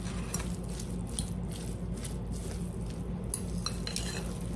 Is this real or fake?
real